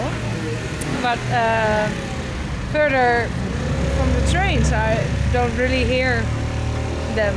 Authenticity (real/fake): real